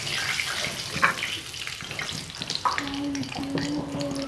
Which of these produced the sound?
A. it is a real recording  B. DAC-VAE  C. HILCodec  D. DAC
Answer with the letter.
A